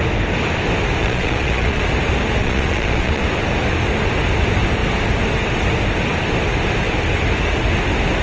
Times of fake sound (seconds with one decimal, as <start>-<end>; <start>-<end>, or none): 1.0-1.8; 2.4-3.2